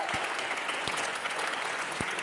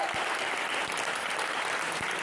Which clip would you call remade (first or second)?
first